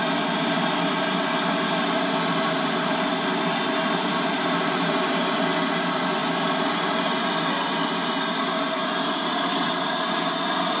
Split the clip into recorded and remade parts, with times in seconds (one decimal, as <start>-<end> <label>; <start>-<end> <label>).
0.0-10.8 recorded